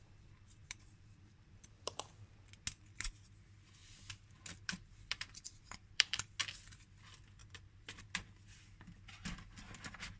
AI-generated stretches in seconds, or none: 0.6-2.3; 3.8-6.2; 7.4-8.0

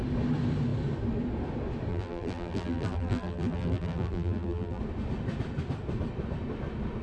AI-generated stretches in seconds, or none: 1.9-4.8

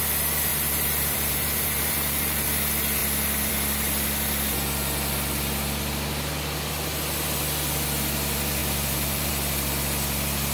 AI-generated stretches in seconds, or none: 0.5-2.6; 8.6-9.3

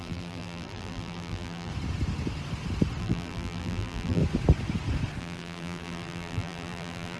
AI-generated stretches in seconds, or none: 0.0-1.7; 3.0-4.2; 5.2-7.2

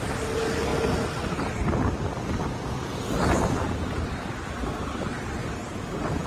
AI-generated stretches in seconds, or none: 5.6-6.3

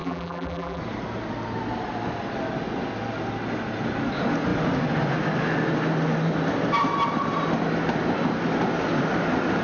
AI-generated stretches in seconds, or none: 0.0-0.8

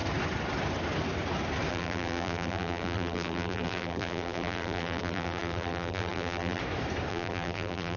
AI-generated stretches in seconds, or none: 1.7-6.6; 7.1-8.0

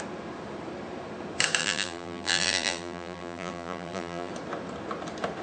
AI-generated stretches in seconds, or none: 1.6-4.3